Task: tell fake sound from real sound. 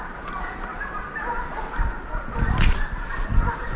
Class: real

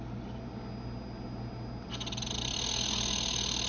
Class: real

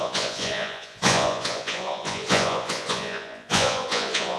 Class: fake